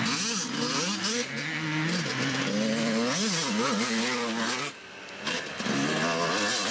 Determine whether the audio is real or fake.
real